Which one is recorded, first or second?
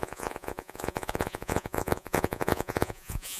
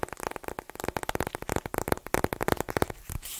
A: second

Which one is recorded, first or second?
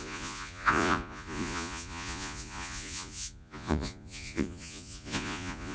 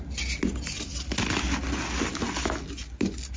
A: second